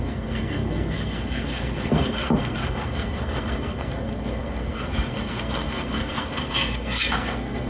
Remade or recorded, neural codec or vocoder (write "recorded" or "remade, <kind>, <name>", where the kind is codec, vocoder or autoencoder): remade, codec, SNAC